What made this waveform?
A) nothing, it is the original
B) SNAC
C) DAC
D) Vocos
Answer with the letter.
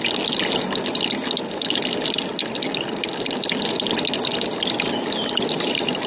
A